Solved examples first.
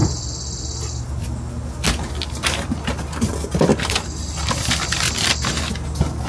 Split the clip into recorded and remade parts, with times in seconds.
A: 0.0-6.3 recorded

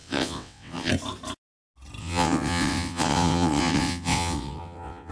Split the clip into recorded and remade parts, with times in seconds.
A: 0.0-0.9 remade; 0.9-2.0 recorded; 2.0-5.1 remade